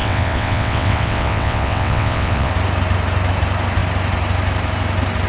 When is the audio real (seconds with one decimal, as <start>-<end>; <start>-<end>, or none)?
2.5-5.3